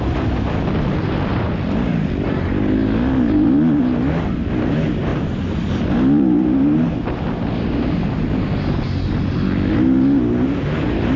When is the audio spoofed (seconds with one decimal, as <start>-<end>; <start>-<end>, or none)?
5.1-6.9